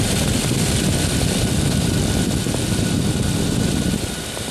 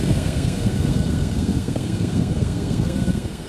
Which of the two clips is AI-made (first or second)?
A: second